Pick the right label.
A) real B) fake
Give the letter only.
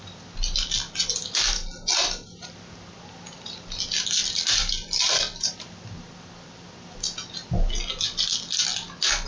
A